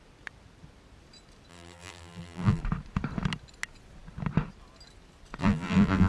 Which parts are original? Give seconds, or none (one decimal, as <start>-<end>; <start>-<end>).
0.0-1.5; 2.6-5.4